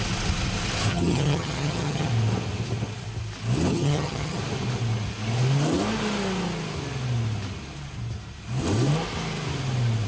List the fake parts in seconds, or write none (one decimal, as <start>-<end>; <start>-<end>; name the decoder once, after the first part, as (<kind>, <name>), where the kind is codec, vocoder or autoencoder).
0.9-2.1 (vocoder, HiFi-GAN); 3.7-4.4